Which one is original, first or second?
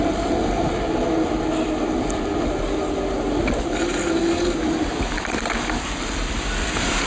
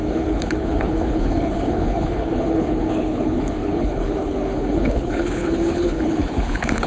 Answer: first